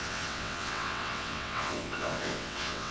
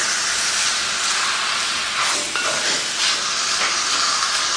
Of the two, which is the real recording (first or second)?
second